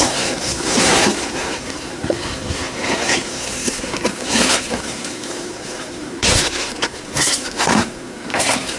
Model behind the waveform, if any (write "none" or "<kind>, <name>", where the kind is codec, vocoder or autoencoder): codec, SNAC